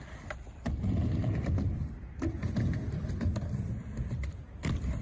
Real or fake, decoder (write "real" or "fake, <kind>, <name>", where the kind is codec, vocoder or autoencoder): real